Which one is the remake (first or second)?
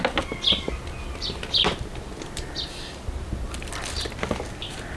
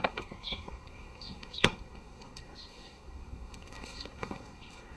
second